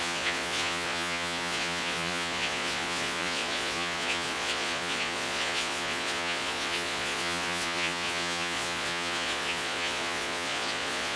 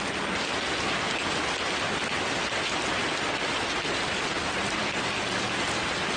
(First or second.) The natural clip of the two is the second